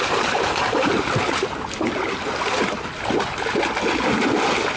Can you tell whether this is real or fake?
real